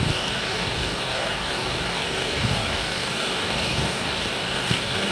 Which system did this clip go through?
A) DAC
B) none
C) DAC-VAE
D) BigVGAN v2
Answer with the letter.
A